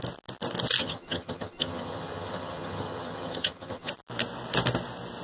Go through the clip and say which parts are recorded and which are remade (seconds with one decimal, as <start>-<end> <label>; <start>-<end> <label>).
0.0-0.8 recorded; 0.8-3.9 remade; 3.9-5.2 recorded